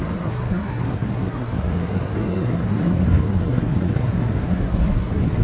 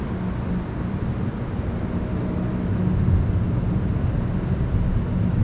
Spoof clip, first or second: first